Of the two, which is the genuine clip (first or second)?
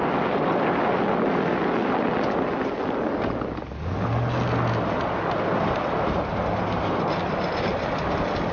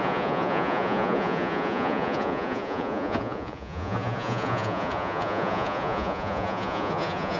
first